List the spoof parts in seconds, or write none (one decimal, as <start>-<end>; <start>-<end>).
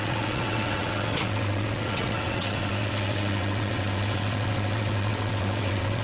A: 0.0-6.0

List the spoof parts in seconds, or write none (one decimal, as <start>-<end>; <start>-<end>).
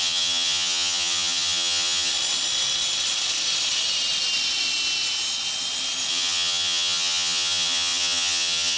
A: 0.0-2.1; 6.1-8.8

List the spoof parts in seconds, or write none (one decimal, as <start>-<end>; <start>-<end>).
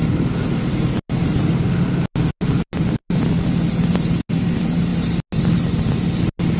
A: none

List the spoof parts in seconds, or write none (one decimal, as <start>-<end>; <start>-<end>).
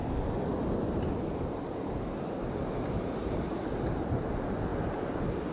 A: 2.9-5.5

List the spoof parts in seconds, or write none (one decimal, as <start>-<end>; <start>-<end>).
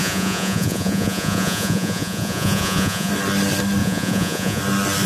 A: 0.0-3.1; 3.8-4.6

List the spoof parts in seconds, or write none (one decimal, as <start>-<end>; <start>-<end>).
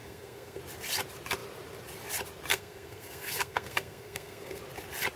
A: 0.0-0.6; 2.5-4.6